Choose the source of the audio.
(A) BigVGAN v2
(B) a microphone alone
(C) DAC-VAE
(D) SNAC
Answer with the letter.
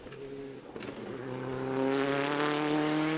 B